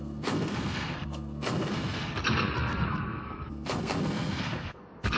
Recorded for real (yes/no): no